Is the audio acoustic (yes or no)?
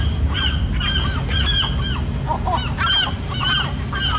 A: yes